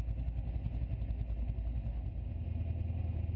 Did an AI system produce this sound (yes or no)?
no